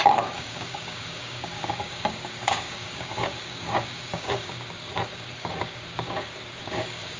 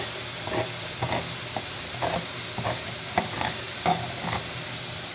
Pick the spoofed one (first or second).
first